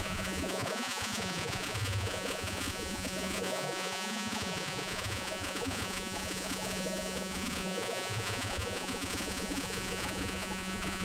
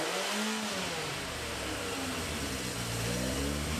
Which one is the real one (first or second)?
second